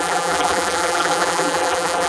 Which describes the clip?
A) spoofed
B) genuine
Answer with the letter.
A